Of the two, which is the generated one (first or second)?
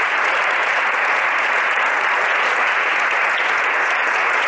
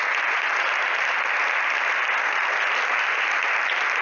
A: first